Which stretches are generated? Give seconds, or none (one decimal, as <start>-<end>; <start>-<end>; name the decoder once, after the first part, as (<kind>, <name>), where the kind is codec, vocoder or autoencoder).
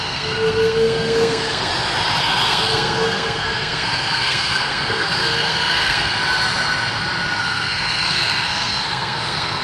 0.0-1.7 (codec, SNAC); 2.2-6.1; 7.4-9.6